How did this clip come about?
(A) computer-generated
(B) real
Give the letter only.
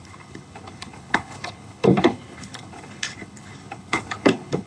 A